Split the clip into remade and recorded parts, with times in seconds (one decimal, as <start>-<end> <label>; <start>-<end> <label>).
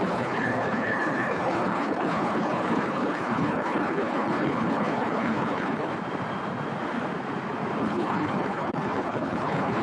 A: 0.0-5.9 remade; 5.9-7.8 recorded; 7.8-9.8 remade